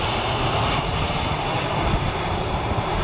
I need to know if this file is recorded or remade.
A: remade